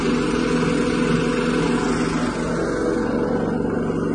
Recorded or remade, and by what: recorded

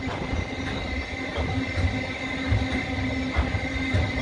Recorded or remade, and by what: recorded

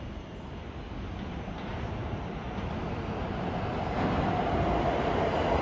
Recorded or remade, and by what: recorded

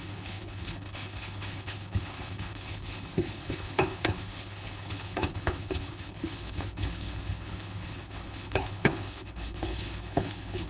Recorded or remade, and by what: remade, codec, HILCodec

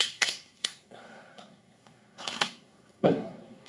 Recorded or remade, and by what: remade, codec, SNAC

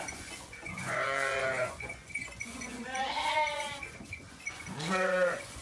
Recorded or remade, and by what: remade, vocoder, Vocos